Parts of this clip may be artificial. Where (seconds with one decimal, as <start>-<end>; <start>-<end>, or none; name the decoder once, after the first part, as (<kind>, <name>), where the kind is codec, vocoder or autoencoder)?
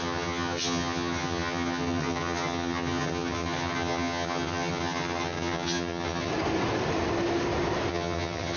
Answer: 0.0-6.3 (vocoder, HiFi-GAN); 7.9-8.6